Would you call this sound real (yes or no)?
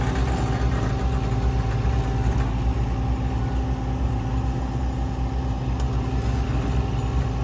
yes